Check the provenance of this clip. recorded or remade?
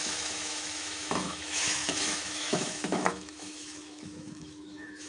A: remade